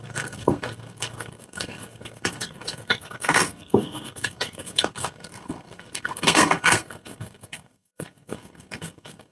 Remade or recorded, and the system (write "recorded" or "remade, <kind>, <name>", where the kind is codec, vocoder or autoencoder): remade, codec, SNAC